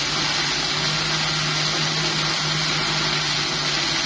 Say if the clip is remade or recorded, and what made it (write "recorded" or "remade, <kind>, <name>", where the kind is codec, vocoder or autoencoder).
recorded